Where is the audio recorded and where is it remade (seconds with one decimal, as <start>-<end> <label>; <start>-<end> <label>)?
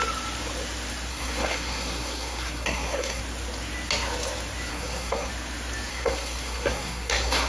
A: 0.0-1.1 recorded; 1.1-3.2 remade; 3.2-4.7 recorded; 4.7-5.3 remade; 5.3-5.9 recorded; 5.9-7.5 remade